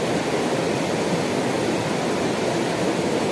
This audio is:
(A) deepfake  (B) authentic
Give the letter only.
B